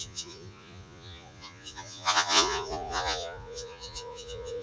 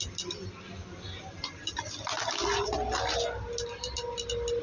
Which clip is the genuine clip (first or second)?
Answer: second